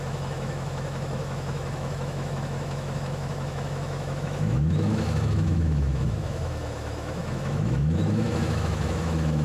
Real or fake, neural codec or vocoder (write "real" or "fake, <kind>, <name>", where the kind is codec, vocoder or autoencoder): fake, autoencoder, DAC-VAE